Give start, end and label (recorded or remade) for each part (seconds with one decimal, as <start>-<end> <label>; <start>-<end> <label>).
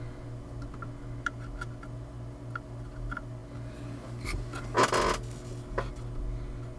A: 0.0-6.8 recorded